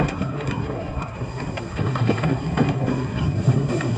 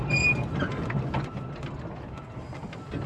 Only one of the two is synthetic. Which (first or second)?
first